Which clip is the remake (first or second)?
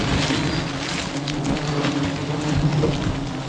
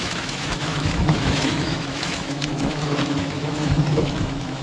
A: second